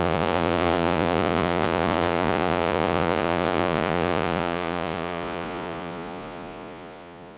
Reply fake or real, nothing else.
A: fake